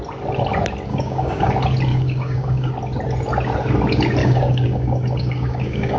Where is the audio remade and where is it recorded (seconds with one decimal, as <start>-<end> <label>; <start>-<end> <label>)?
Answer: 0.0-0.9 recorded; 0.9-1.5 remade; 1.5-1.9 recorded; 1.9-2.7 remade; 2.7-4.2 recorded; 4.2-6.0 remade